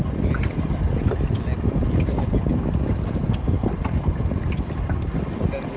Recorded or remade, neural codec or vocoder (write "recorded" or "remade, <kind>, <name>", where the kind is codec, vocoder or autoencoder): recorded